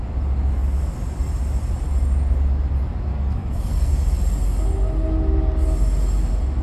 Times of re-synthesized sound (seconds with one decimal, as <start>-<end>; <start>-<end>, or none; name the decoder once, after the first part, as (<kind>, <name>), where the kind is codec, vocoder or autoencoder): 3.1-3.9 (codec, SNAC)